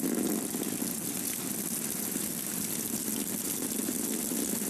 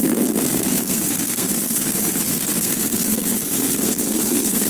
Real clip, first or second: first